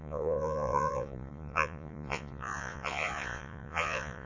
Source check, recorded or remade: remade